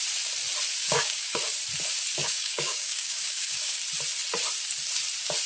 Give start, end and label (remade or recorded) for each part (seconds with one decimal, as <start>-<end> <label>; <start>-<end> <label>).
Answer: 0.0-0.8 recorded; 0.8-1.4 remade; 1.4-2.2 recorded; 2.2-3.8 remade; 3.8-5.5 recorded